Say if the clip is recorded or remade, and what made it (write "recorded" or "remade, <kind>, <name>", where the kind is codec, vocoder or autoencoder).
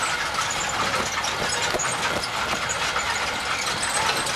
recorded